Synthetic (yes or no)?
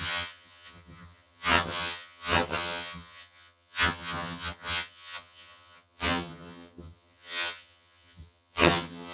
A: yes